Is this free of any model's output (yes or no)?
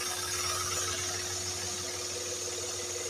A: yes